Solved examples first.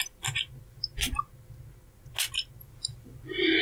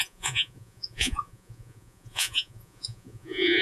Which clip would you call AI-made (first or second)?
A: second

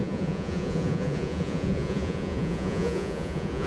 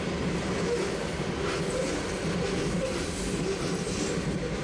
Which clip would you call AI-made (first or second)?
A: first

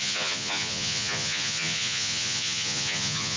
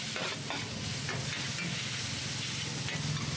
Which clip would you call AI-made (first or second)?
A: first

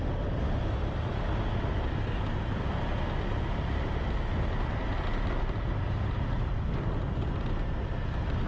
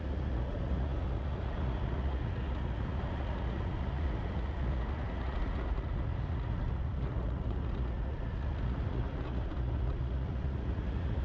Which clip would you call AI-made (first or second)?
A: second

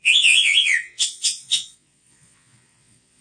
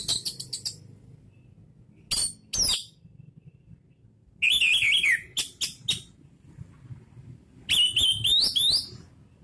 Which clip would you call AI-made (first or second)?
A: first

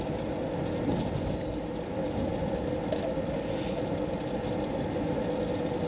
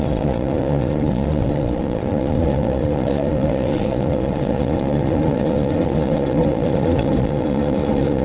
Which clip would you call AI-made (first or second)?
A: second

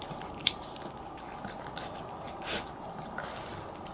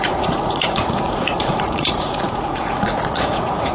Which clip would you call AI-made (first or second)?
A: second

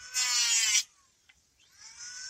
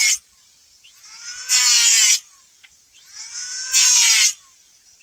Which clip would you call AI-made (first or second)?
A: second